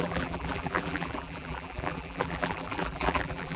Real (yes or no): no